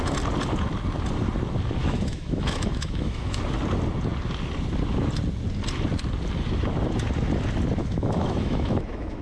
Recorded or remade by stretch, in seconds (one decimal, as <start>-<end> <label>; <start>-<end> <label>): 0.0-1.8 recorded; 1.8-3.4 remade; 3.4-7.8 recorded; 7.8-9.2 remade